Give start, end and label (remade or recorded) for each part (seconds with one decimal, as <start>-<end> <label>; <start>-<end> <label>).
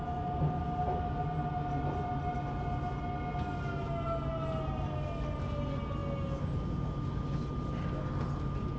0.0-8.8 recorded